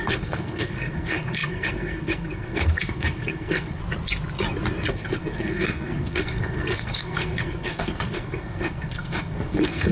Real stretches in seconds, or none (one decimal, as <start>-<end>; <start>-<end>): 3.8-4.9